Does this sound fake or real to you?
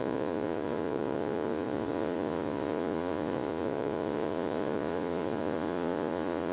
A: fake